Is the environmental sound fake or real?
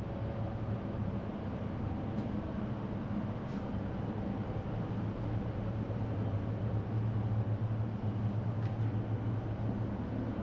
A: real